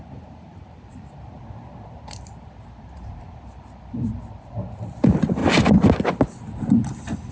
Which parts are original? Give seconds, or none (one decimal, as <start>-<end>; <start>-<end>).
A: 5.4-7.3